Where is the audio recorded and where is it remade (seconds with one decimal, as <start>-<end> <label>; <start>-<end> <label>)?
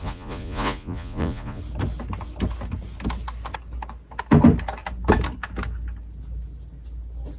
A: 0.0-1.6 remade; 1.6-7.4 recorded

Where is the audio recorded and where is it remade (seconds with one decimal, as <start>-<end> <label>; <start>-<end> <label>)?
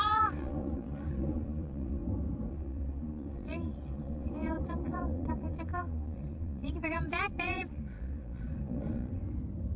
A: 0.0-2.0 remade; 2.0-2.5 recorded; 2.5-9.2 remade; 9.2-9.8 recorded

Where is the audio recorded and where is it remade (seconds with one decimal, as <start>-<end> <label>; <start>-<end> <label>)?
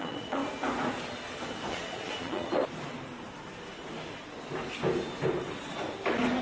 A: 0.0-0.4 remade; 0.4-1.7 recorded; 1.7-2.5 remade; 2.5-6.4 recorded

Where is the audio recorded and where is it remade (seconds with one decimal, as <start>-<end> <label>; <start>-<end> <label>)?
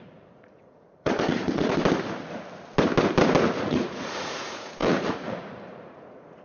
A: 0.0-1.8 remade; 1.8-3.6 recorded; 3.6-6.4 remade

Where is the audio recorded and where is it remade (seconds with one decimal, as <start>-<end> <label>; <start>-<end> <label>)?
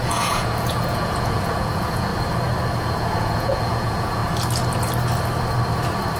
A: 0.0-2.1 remade; 2.1-2.8 recorded; 2.8-4.2 remade; 4.2-6.2 recorded